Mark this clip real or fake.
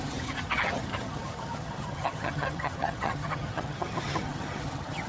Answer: fake